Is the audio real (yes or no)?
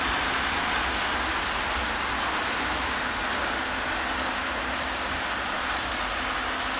yes